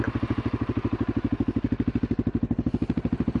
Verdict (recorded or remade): recorded